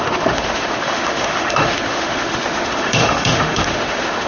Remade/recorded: remade